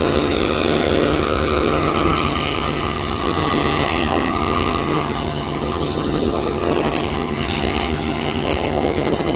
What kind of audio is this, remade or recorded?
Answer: remade